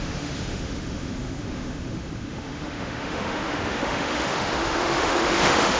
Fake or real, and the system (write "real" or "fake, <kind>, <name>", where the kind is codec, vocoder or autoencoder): fake, autoencoder, DAC-VAE